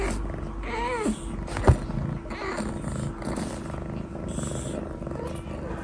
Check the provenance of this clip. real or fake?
real